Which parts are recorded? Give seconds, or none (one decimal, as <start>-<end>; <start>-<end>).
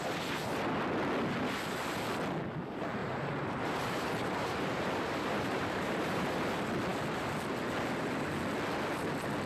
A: 0.0-3.0; 6.4-9.5